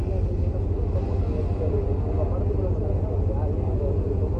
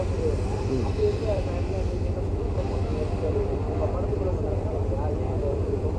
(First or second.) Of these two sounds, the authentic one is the first